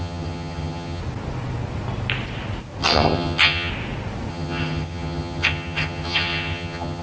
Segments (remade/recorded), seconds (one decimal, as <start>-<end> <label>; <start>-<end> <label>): 0.0-1.0 remade; 1.0-2.8 recorded; 2.8-3.7 remade; 3.7-4.3 recorded; 4.3-7.0 remade

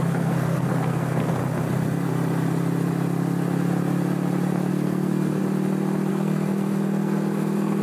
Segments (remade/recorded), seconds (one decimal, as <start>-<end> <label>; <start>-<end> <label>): 0.0-1.4 remade; 1.4-4.7 recorded; 4.7-5.4 remade; 5.4-6.1 recorded; 6.1-7.8 remade

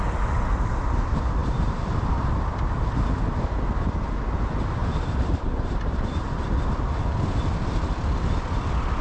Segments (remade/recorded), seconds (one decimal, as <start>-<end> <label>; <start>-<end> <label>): 0.0-1.4 recorded; 1.4-1.9 remade; 1.9-4.8 recorded; 4.8-6.5 remade; 6.5-9.0 recorded

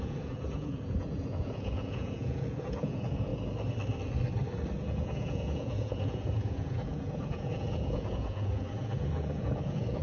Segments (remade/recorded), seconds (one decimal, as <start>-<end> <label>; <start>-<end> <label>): 0.0-3.3 remade; 3.3-4.8 recorded; 4.8-10.0 remade

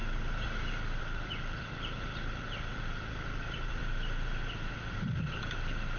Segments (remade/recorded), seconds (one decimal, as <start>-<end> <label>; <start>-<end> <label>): 0.0-2.7 recorded; 2.7-5.4 remade; 5.4-6.0 recorded

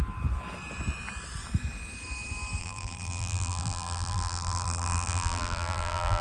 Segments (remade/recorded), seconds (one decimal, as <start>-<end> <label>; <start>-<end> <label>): 0.0-2.6 recorded; 2.6-6.2 remade

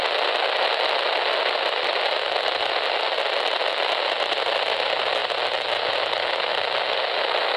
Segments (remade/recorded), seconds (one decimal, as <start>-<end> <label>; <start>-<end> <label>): 0.0-7.6 recorded